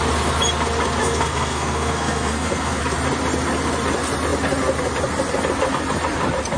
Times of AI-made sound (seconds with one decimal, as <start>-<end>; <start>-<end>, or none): 1.0-2.8